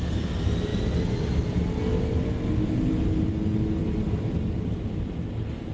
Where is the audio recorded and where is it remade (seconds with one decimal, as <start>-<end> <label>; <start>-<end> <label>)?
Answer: 0.0-5.7 recorded